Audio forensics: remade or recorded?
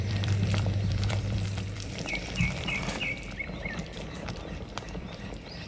remade